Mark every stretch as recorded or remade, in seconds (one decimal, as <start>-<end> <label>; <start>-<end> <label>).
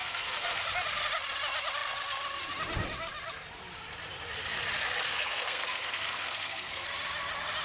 0.0-0.6 remade; 0.6-5.1 recorded; 5.1-6.8 remade; 6.8-7.6 recorded